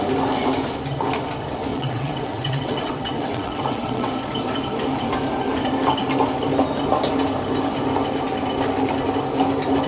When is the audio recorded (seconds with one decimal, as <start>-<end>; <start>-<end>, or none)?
0.0-1.7; 4.1-9.9